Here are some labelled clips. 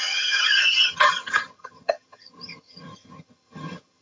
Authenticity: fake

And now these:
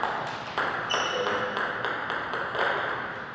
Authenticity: real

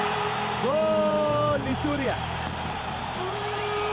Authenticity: fake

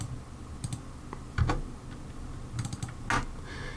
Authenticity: real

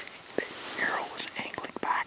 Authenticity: real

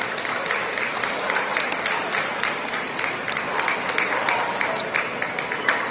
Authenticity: fake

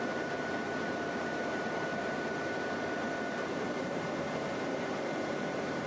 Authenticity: fake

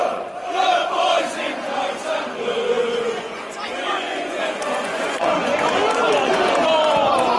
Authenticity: fake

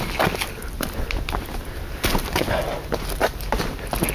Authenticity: real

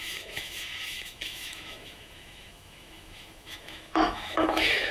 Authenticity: fake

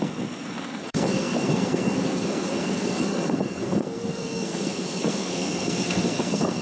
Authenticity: fake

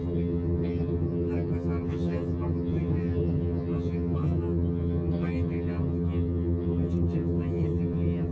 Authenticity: fake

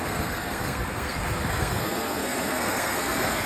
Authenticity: fake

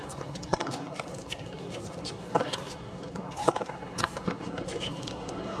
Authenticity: fake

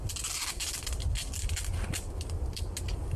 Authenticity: real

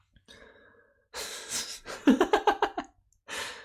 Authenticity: real